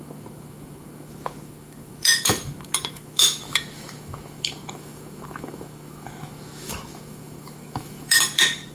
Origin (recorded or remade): remade